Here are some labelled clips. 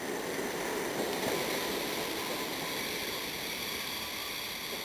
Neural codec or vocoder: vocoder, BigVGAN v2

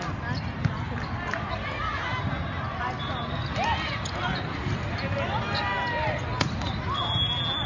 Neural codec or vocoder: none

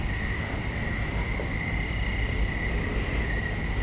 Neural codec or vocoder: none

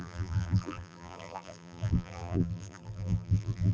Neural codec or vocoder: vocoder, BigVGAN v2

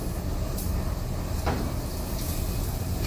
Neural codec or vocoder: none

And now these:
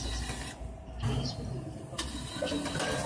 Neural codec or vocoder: none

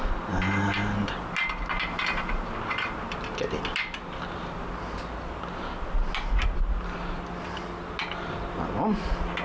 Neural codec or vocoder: none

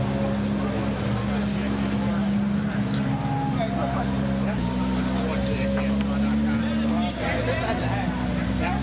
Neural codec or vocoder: none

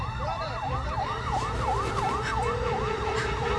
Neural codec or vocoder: vocoder, BigVGAN v2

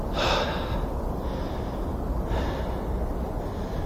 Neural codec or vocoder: none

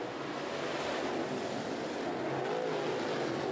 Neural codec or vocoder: none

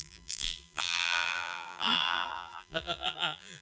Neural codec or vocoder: vocoder, BigVGAN v2